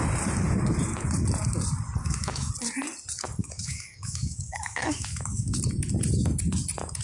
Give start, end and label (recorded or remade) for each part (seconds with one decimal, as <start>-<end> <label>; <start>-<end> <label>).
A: 0.0-2.0 recorded; 2.0-2.5 remade; 2.5-3.4 recorded; 3.4-5.6 remade; 5.6-7.0 recorded